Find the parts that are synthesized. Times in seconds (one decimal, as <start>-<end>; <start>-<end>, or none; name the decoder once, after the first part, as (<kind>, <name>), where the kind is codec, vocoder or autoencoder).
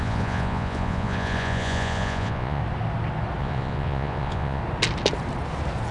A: 0.0-2.6 (vocoder, Vocos); 3.4-4.6